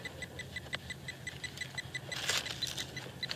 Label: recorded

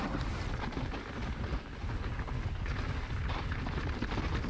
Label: recorded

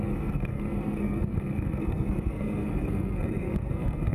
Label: remade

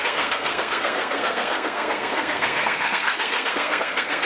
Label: remade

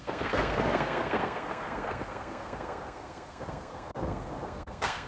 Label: remade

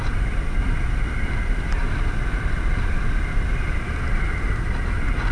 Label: recorded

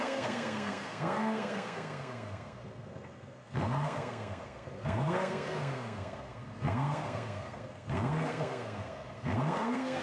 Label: remade